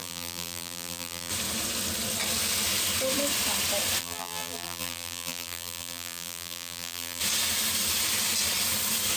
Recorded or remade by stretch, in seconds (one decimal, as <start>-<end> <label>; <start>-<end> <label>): 0.0-1.3 remade; 1.3-4.0 recorded; 4.0-7.2 remade; 7.2-9.2 recorded